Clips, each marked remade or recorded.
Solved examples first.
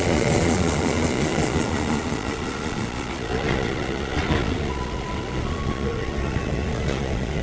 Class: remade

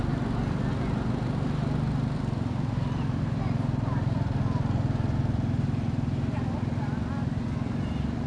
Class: recorded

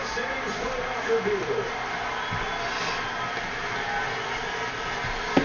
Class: recorded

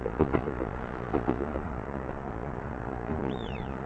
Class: remade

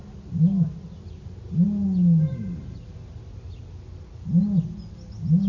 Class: recorded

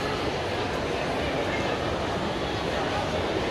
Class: recorded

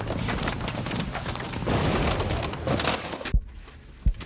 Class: recorded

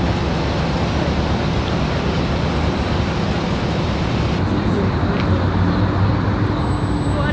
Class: recorded